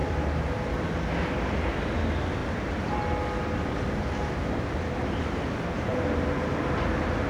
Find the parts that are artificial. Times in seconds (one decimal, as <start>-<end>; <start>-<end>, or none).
none